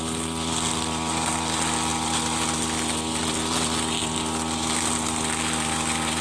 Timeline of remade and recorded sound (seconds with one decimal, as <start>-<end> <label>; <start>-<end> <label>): 0.0-6.2 recorded